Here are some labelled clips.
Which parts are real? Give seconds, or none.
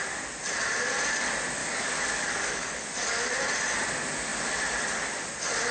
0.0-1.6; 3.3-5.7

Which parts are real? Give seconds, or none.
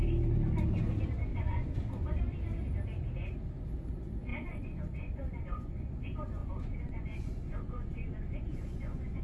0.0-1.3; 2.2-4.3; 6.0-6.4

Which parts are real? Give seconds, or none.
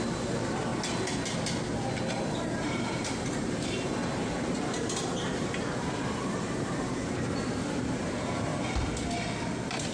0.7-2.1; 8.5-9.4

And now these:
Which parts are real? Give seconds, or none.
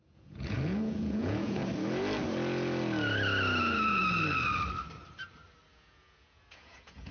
1.6-3.6; 4.0-5.7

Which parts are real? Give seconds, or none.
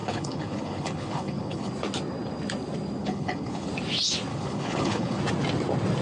1.7-3.0; 3.7-4.3; 5.2-6.0